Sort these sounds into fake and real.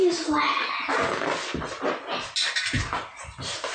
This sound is real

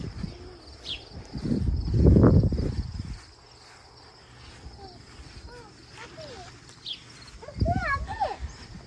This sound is real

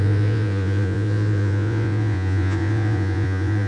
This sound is fake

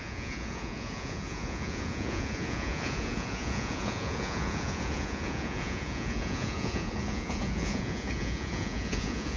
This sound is fake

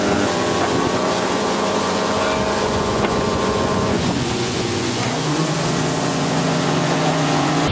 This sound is fake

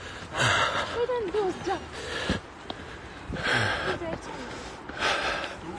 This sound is real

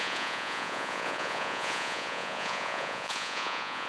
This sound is fake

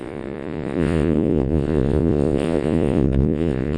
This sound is fake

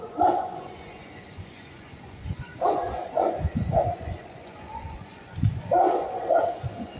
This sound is fake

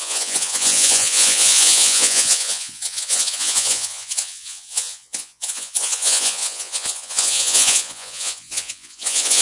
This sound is fake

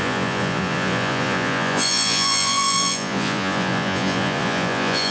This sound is fake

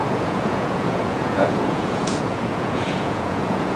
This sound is fake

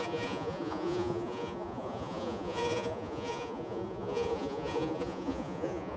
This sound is fake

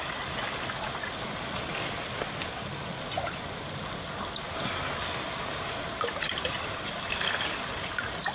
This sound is real